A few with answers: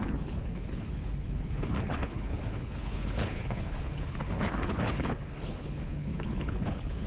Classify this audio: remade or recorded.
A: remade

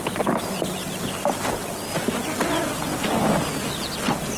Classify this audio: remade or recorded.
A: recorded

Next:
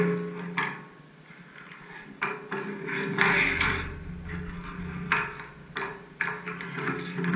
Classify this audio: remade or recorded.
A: recorded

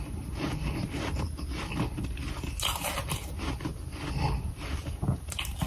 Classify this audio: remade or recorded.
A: recorded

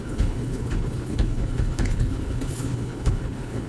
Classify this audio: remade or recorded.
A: remade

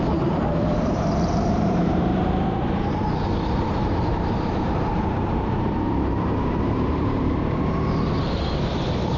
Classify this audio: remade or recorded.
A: remade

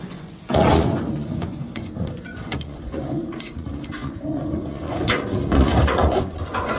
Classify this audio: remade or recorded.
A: remade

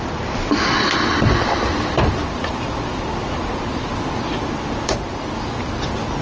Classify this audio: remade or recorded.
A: recorded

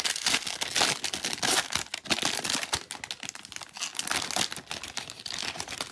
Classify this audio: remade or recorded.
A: recorded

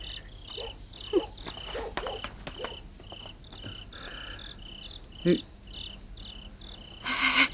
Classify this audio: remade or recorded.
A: recorded